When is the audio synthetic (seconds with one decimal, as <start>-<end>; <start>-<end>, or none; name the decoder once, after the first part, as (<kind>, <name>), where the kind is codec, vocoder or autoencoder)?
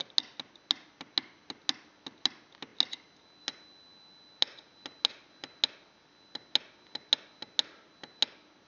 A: none